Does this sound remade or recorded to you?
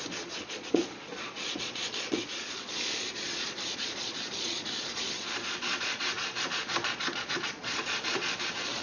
remade